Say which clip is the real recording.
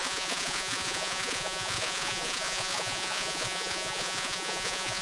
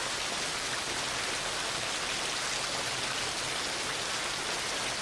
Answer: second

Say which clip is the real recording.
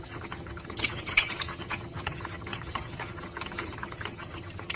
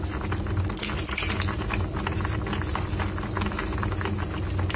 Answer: second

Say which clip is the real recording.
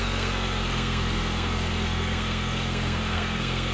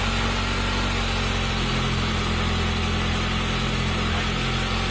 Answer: second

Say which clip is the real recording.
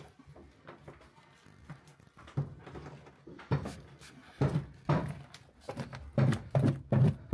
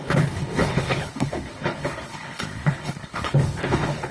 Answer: first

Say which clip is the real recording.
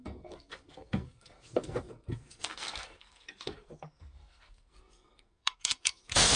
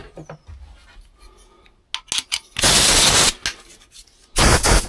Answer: second